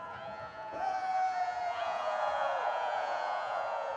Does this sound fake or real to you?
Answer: fake